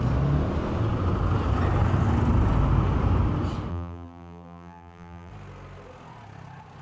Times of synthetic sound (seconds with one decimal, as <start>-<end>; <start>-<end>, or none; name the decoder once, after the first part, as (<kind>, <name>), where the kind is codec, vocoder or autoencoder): 3.7-5.3 (vocoder, BigVGAN v2)